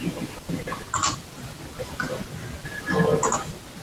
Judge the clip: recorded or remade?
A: recorded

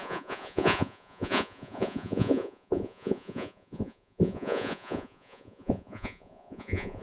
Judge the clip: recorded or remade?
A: remade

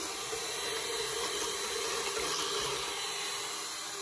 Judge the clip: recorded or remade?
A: recorded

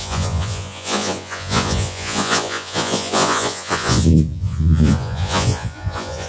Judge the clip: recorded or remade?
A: remade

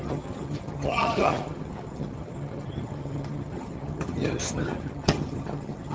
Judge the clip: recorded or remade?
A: remade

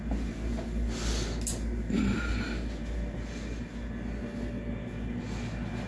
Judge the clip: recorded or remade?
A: recorded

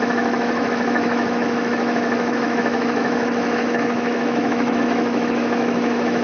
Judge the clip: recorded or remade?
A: remade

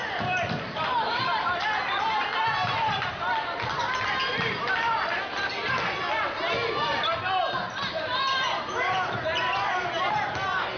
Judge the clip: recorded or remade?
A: recorded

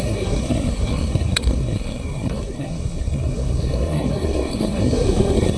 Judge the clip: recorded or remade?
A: remade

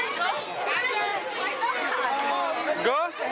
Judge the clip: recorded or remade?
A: recorded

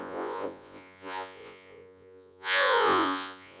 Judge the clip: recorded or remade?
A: remade